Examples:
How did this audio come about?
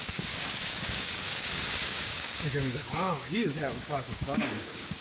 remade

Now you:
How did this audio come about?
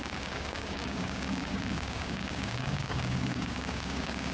remade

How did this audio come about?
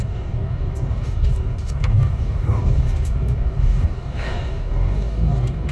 remade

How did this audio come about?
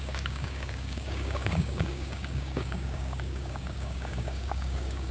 remade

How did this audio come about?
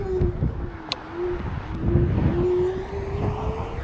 recorded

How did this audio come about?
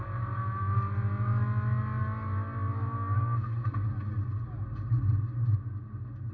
recorded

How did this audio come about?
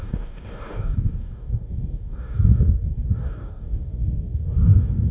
remade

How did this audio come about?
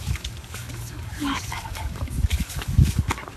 remade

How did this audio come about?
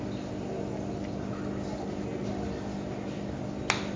recorded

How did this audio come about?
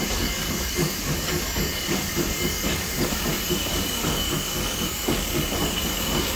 remade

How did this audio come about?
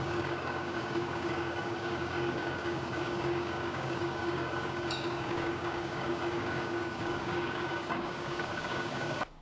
remade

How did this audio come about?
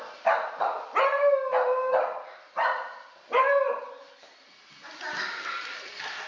recorded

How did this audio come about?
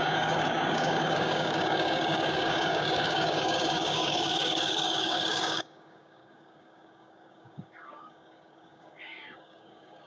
remade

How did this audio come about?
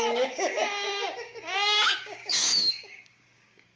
remade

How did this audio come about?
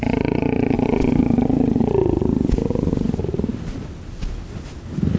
recorded